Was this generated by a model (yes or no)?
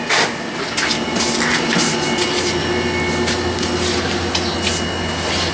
no